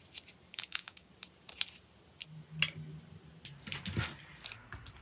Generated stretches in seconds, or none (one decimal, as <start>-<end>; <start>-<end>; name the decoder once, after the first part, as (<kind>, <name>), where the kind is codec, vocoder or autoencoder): 0.5-1.1 (codec, DAC)